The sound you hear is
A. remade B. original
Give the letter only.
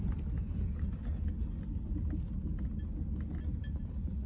B